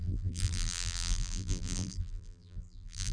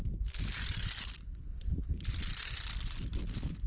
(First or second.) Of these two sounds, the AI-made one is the first